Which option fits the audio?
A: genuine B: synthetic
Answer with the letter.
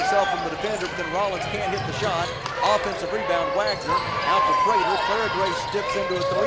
A